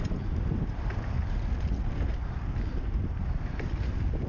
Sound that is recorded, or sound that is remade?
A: recorded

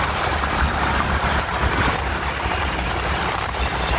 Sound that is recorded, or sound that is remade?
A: recorded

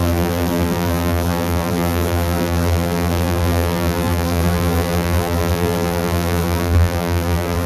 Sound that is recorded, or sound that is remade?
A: remade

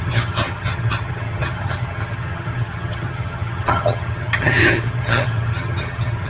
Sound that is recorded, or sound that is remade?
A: remade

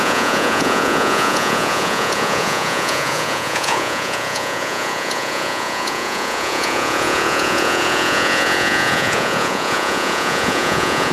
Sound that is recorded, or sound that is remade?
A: remade